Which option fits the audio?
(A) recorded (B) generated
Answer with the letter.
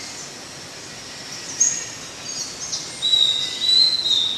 A